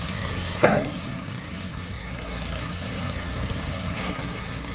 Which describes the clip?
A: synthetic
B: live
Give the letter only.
A